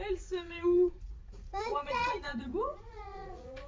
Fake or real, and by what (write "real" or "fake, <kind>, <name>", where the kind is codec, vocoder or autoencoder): fake, vocoder, Vocos